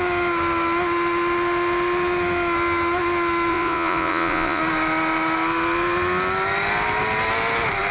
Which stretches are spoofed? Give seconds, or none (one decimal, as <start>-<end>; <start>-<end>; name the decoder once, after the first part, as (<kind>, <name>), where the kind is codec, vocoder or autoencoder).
3.5-4.6 (vocoder, Vocos)